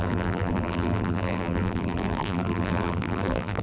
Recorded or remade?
remade